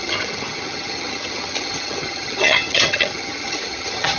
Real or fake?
fake